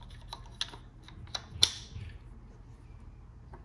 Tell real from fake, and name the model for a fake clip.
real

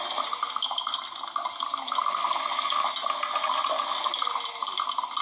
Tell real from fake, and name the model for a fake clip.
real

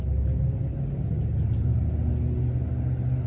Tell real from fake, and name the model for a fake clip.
real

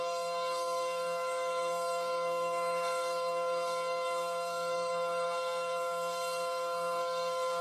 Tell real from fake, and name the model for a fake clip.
fake, codec, SNAC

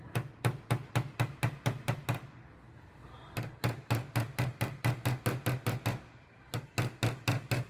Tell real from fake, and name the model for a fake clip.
real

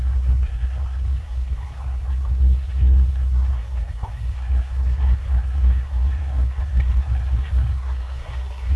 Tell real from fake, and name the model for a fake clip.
fake, codec, SNAC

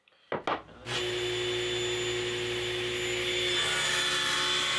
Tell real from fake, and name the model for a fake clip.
real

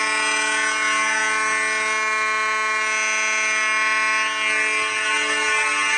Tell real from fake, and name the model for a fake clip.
real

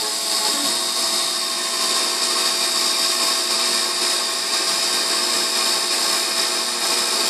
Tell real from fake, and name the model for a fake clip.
real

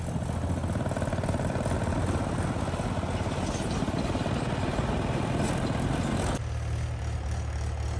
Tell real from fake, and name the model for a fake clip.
real